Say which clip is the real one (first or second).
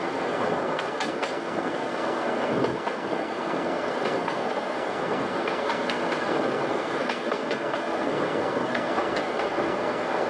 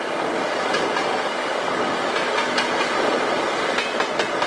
second